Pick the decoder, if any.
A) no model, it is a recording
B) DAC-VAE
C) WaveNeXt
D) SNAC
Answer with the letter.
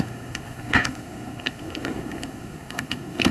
D